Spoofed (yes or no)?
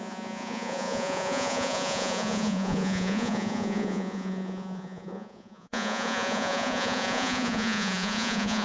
yes